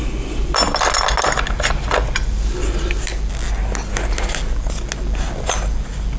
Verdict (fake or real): real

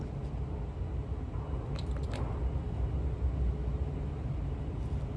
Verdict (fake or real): real